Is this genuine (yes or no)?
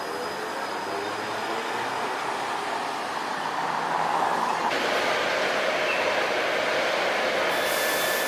yes